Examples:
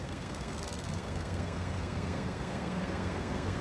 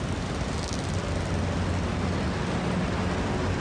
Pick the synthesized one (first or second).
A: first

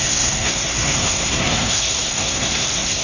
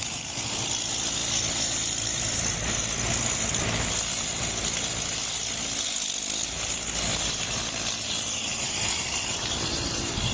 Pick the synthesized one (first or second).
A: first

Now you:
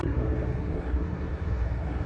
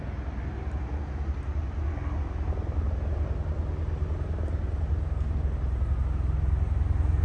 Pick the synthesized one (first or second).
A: first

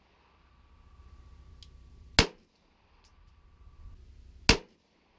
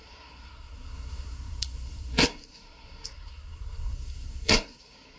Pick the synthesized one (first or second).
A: second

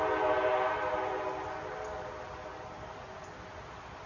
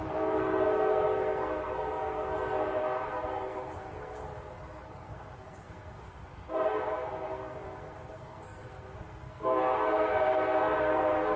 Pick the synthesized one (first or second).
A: second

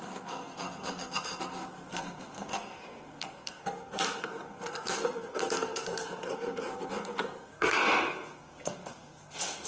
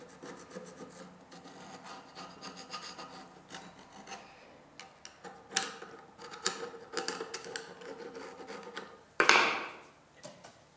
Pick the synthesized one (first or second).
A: first